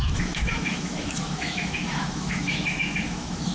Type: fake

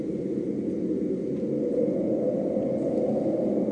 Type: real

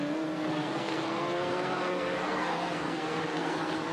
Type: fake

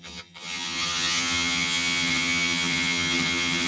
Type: fake